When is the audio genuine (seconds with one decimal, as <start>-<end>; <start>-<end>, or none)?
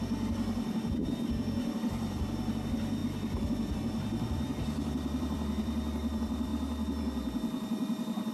6.5-8.3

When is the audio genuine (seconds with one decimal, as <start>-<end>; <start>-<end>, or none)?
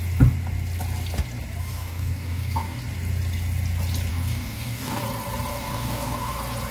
0.0-1.6; 2.8-4.1; 5.0-5.5; 6.3-6.7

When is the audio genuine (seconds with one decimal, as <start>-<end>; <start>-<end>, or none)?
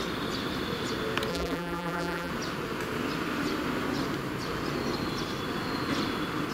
0.0-1.3; 2.3-6.5